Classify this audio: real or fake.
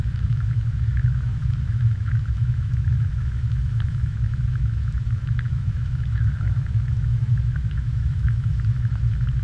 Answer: fake